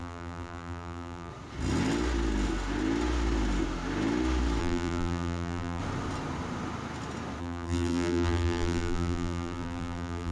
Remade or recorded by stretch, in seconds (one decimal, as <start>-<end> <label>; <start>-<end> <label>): 0.0-1.3 remade; 1.3-4.6 recorded; 4.6-5.8 remade; 5.8-7.4 recorded; 7.4-10.3 remade